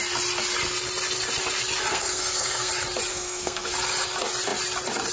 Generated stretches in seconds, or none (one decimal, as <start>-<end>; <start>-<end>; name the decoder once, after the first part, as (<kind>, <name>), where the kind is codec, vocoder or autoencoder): 1.9-2.7 (codec, SNAC); 3.1-3.7